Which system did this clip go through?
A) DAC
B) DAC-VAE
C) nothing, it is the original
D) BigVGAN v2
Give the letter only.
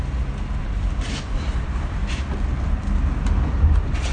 C